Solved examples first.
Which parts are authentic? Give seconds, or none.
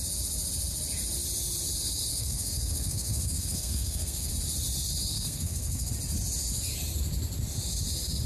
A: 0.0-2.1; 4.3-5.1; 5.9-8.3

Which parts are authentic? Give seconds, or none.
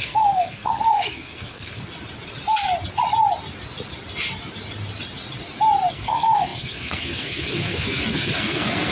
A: 1.8-5.9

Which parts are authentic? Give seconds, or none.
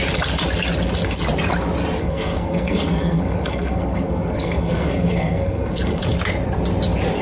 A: 0.0-2.0; 6.0-7.2